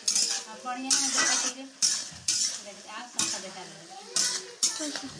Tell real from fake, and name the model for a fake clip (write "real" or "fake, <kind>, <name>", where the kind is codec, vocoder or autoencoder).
real